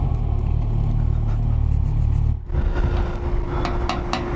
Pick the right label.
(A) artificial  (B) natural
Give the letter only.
B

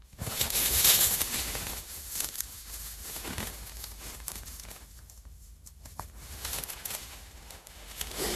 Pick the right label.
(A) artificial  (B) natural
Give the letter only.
A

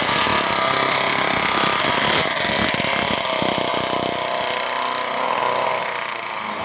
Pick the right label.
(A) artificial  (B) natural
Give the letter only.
B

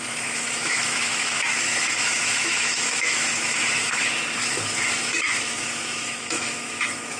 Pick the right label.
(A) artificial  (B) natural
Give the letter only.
A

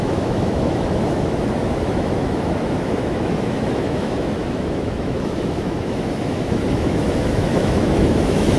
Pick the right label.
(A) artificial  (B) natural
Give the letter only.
A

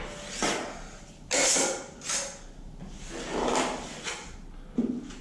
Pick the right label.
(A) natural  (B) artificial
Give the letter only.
A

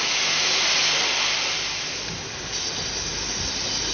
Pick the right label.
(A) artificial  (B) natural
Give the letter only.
B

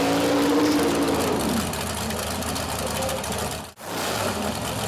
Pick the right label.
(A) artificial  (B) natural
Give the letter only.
B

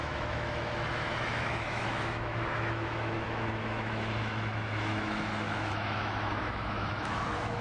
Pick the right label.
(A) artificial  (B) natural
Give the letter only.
A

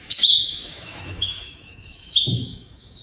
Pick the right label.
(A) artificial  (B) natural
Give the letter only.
A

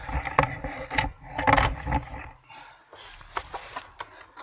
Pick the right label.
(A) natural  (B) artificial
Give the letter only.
A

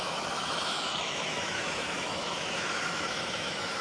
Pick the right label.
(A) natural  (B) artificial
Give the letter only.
B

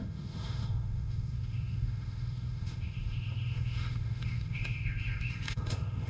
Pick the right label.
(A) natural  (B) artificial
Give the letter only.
B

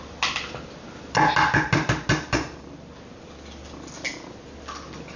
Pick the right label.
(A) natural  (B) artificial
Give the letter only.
A